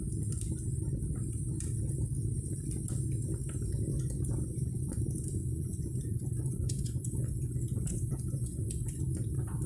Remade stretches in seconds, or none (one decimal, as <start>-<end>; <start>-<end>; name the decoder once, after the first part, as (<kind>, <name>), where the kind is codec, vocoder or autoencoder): 3.9-5.0 (vocoder, Vocos); 5.4-9.0